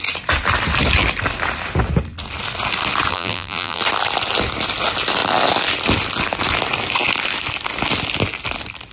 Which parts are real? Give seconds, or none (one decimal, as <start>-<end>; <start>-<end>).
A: 0.0-3.1; 3.8-8.9